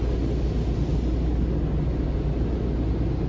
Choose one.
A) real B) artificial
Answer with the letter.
A